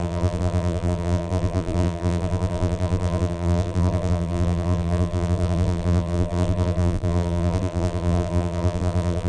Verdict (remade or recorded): remade